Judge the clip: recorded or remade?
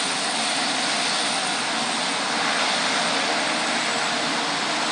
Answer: recorded